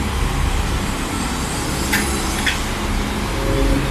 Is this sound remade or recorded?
recorded